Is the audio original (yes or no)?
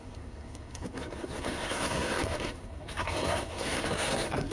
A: no